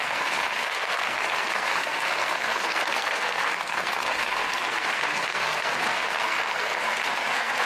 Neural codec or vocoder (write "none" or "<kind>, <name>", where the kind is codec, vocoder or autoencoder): codec, SNAC